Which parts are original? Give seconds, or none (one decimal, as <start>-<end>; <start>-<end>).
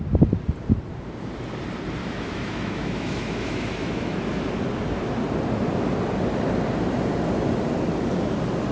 0.0-2.0; 4.3-8.7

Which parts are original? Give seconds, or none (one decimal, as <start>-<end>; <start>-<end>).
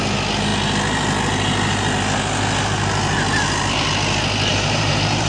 0.0-4.5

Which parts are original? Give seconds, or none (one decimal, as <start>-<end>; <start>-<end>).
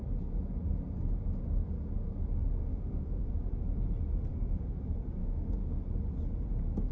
0.0-2.6; 3.3-4.3; 4.8-5.2; 5.8-6.9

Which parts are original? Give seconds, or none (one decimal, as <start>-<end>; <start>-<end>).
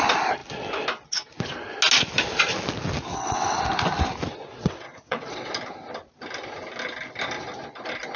0.0-3.1; 3.6-4.6; 5.5-8.2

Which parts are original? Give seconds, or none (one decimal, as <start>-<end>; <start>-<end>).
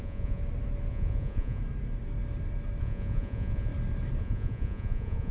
0.4-0.9; 1.6-2.8; 3.7-4.2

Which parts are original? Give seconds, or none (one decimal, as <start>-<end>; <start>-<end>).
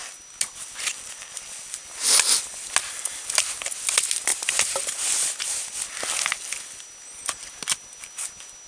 0.0-4.3; 5.5-8.7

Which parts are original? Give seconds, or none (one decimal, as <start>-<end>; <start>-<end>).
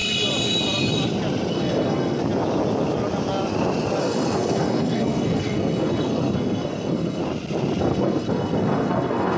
0.0-1.5; 2.2-4.0; 7.2-7.8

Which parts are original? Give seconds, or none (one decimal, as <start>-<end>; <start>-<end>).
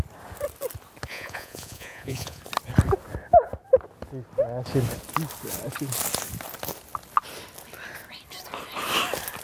0.0-1.1; 2.4-9.4